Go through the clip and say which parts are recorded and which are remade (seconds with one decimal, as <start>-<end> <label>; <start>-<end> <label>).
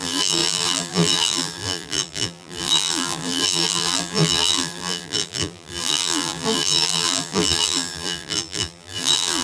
0.0-9.4 remade